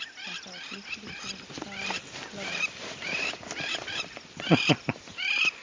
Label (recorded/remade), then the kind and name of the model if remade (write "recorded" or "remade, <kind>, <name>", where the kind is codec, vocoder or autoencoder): remade, vocoder, BigVGAN v2